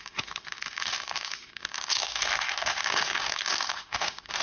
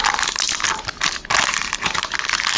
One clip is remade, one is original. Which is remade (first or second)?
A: first